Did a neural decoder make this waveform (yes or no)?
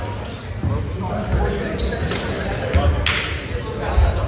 no